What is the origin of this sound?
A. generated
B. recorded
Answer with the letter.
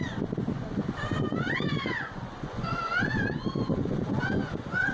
A